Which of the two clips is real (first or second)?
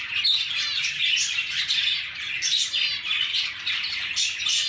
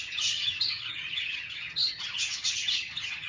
first